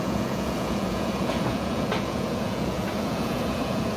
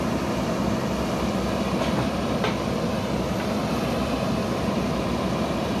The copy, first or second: first